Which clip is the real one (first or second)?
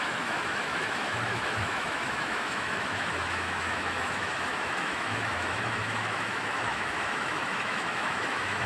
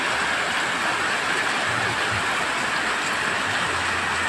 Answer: second